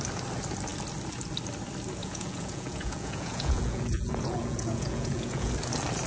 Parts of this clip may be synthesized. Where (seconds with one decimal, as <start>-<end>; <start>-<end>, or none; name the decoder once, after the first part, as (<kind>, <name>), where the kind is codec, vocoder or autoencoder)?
2.0-5.5 (vocoder, Vocos)